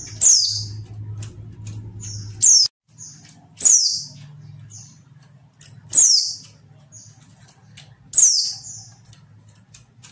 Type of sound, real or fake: real